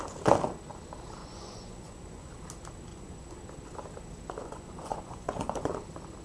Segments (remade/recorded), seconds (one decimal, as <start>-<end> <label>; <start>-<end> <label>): 0.0-1.2 recorded; 1.2-2.3 remade; 2.3-2.9 recorded; 2.9-3.4 remade; 3.4-4.4 recorded; 4.4-5.7 remade; 5.7-6.2 recorded